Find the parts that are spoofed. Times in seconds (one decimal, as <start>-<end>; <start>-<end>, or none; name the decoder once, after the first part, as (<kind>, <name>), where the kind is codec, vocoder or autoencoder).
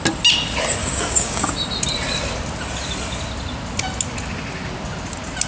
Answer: 0.8-1.5 (codec, DAC)